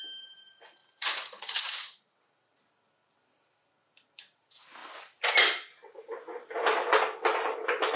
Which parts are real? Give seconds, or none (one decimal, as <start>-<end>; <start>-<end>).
0.0-0.8; 2.6-8.0

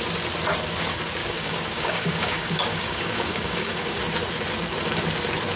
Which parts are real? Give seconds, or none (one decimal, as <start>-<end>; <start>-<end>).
0.0-1.2; 4.0-5.6

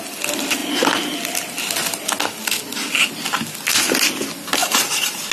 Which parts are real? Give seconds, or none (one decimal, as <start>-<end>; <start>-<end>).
0.0-4.6

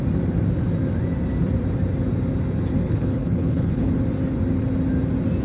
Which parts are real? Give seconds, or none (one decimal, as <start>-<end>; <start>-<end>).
0.0-2.8; 3.9-5.4

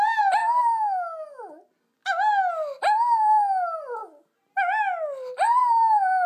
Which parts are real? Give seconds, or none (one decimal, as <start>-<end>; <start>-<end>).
0.0-6.3

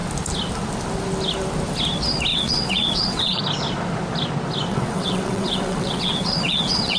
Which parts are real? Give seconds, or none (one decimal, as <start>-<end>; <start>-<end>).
0.0-2.3; 3.4-4.7